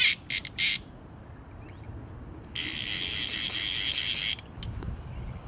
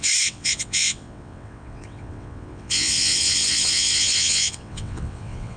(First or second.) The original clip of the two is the first